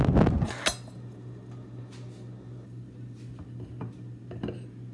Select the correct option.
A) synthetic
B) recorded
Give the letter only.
B